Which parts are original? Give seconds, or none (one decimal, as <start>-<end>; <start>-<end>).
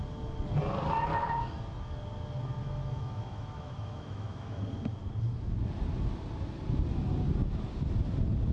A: 0.0-2.6; 4.6-8.5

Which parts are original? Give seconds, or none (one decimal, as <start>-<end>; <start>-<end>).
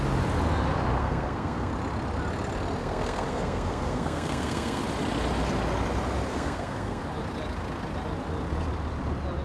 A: 0.0-1.0; 1.7-2.8; 4.8-6.3; 7.0-9.4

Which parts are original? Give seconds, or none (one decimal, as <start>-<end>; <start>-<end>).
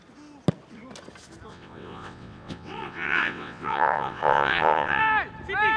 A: 0.0-1.5; 5.0-5.8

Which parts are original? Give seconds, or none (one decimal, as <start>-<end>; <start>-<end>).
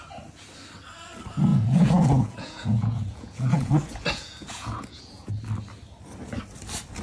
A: 0.0-1.5; 5.3-7.0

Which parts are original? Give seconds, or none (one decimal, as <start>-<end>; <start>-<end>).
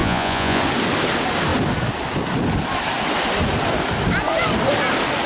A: 0.6-5.3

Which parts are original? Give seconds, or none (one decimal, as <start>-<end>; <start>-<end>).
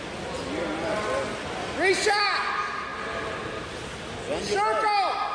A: 0.0-5.3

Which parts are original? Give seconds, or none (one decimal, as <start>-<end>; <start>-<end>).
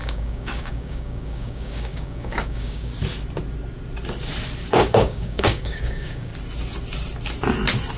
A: 2.9-4.7; 6.3-8.0